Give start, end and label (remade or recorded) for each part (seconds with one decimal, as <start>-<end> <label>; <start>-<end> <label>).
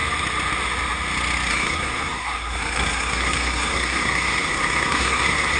0.0-1.5 recorded; 1.5-5.6 remade